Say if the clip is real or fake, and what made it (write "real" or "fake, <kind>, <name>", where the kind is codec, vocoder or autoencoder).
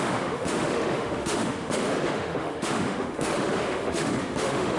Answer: fake, autoencoder, DAC-VAE